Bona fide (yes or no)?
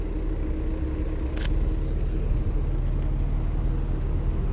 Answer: yes